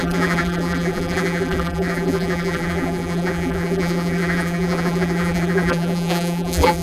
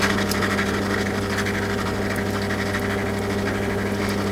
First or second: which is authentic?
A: second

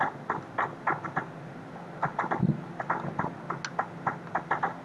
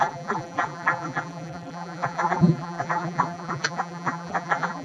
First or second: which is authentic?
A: first